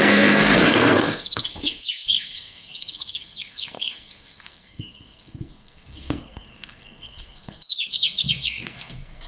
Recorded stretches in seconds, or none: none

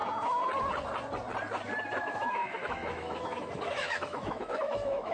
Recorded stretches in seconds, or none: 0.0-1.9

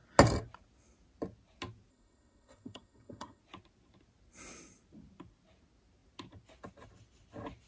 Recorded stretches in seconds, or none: 0.0-1.9; 3.4-7.7

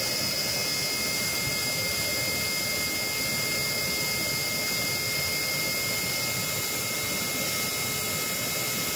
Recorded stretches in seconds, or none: 0.0-9.0

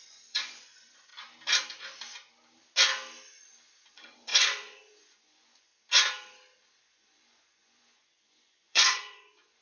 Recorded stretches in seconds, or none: 1.1-3.8; 5.7-6.8